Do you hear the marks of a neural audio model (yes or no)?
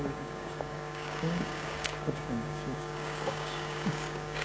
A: yes